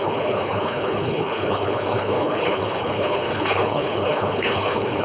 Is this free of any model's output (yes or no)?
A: no